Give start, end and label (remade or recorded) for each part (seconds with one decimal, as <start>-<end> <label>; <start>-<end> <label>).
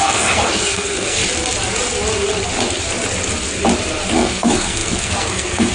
0.0-1.2 remade; 1.2-4.1 recorded; 4.1-5.7 remade